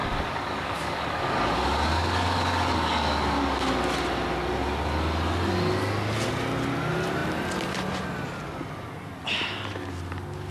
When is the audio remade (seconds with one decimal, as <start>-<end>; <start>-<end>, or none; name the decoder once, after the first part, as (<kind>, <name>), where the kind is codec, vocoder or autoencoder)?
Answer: 0.0-1.5 (codec, DAC); 1.9-3.7

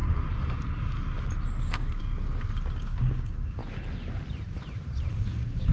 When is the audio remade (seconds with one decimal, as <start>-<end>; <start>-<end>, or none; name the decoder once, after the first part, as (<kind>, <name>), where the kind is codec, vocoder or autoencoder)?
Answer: 1.6-2.0 (codec, DAC); 2.8-3.6; 5.1-5.7